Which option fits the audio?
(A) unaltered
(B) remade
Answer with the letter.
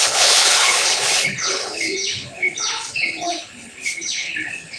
B